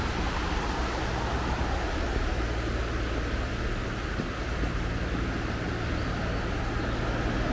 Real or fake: real